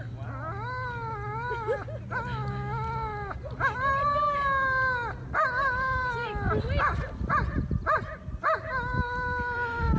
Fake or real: real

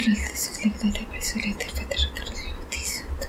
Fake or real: real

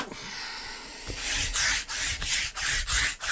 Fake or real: real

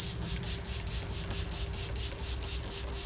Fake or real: real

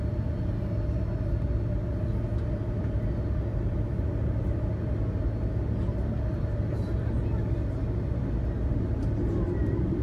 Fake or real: real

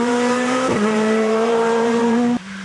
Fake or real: fake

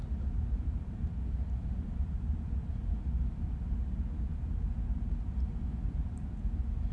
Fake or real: real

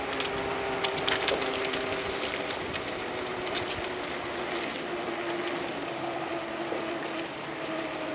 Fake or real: real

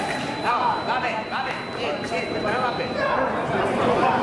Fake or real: fake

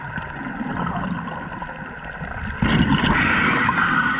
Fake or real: real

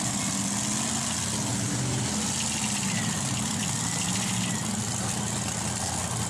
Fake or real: real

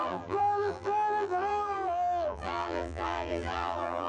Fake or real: fake